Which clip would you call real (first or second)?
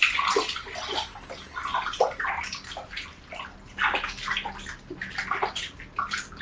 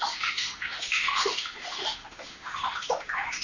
first